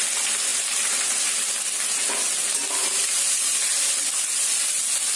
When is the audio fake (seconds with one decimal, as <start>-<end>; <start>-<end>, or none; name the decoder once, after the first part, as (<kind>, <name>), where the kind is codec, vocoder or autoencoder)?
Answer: 0.5-1.5 (vocoder, BigVGAN v2); 2.8-3.7